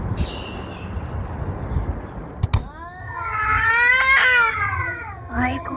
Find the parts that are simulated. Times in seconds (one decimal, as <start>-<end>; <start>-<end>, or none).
3.0-3.7; 4.5-5.8